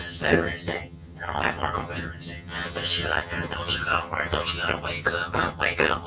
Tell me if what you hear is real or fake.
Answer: fake